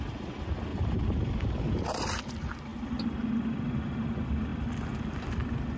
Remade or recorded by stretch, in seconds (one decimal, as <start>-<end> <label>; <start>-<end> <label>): 0.0-0.7 recorded; 0.7-2.2 remade; 2.2-5.8 recorded